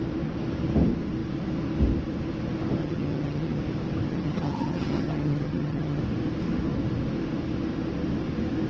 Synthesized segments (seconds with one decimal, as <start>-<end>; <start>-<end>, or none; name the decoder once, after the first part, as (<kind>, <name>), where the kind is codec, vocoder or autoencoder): 2.8-3.6 (vocoder, HiFi-GAN); 4.1-6.0

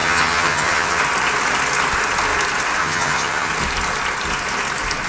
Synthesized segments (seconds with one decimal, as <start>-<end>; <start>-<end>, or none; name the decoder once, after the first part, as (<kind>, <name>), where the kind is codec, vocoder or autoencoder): 0.0-1.0 (vocoder, HiFi-GAN); 2.8-3.5

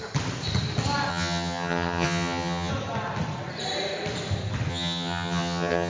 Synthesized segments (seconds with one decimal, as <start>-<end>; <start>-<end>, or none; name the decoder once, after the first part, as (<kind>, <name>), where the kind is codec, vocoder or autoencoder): 1.1-2.7 (vocoder, HiFi-GAN); 4.7-5.9

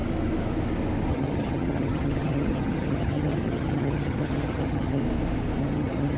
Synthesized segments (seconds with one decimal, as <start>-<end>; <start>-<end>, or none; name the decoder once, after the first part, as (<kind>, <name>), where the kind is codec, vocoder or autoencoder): 1.1-5.0 (vocoder, HiFi-GAN); 5.6-6.2

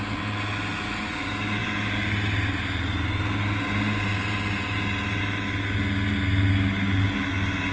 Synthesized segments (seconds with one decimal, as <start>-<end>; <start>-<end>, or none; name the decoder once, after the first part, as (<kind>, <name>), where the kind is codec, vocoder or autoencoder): none

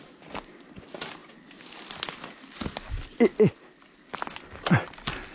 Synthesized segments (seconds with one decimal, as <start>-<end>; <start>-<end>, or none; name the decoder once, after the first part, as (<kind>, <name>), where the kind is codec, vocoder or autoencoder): none

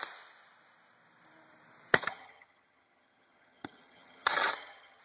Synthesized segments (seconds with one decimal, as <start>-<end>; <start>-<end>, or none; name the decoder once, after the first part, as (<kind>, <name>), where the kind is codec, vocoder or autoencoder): 2.0-5.0 (vocoder, HiFi-GAN)

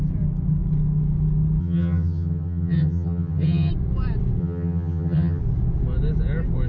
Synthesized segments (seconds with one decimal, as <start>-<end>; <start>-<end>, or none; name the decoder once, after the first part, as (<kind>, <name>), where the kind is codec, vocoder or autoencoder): 1.6-3.7 (vocoder, HiFi-GAN); 4.4-5.4